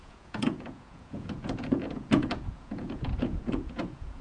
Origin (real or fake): fake